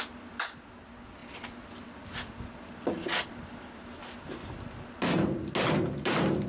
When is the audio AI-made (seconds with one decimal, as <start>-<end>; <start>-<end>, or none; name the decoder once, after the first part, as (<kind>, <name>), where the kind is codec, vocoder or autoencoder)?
none